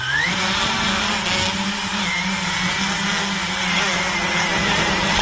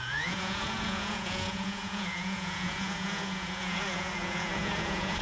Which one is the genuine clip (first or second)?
first